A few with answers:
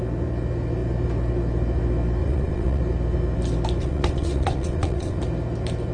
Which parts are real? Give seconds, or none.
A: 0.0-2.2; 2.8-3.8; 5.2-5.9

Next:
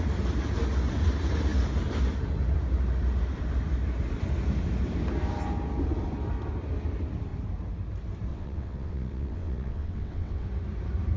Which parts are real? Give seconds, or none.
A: 0.0-8.3; 10.5-11.2

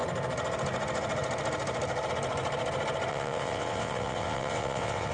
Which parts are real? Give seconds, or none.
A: 0.0-3.1

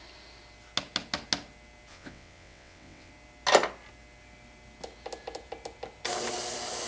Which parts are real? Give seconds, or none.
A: 0.0-1.9; 3.1-6.9

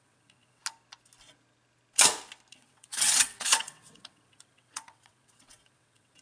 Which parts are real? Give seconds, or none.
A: 0.6-2.5

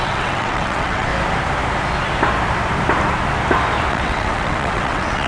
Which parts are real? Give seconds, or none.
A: 1.1-3.9